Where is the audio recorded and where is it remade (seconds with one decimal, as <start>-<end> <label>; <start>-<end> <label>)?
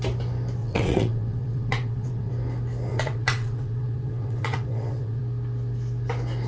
0.0-0.6 recorded; 0.6-2.3 remade; 2.3-2.9 recorded; 2.9-5.2 remade; 5.2-6.5 recorded